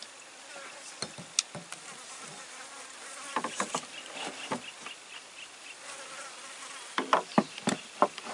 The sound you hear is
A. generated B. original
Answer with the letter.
B